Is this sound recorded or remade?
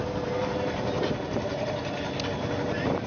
recorded